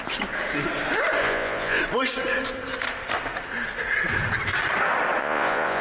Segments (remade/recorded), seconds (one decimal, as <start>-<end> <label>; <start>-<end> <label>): 0.0-1.2 recorded; 1.2-1.8 remade; 1.8-5.2 recorded; 5.2-5.8 remade